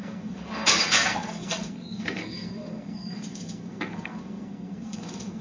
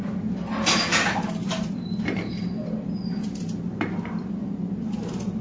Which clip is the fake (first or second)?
first